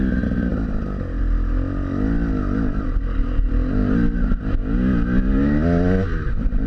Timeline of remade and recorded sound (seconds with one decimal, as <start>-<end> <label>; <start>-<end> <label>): 0.0-6.7 recorded